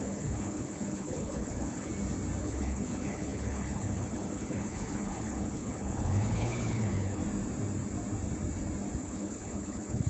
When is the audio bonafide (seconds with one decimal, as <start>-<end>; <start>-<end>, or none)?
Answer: 1.9-2.4; 7.2-9.0